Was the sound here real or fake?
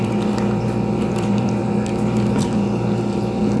fake